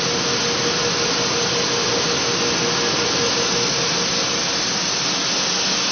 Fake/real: real